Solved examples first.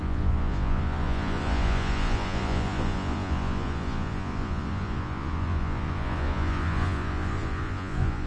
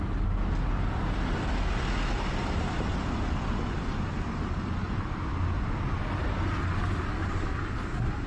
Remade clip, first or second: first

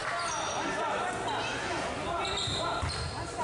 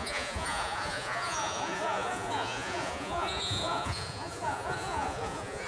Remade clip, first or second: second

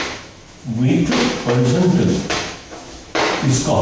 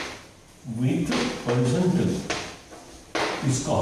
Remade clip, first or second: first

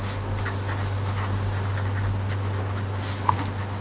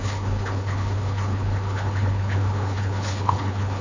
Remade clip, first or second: second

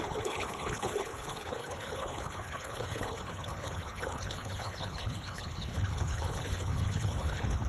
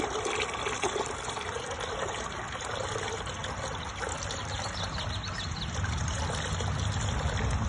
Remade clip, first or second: first